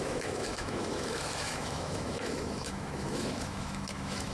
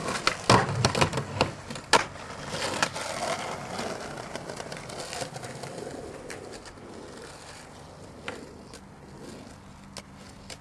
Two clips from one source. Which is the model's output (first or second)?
first